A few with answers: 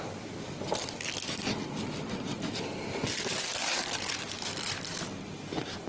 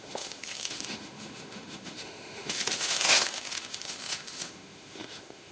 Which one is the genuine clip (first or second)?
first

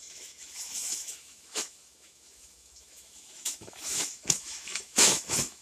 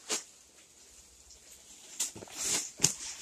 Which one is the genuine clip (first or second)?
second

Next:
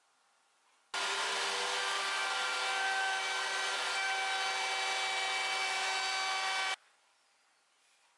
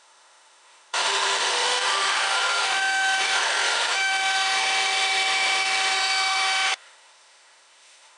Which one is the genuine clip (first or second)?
first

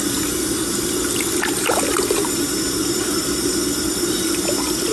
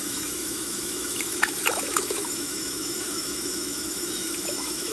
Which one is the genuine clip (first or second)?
first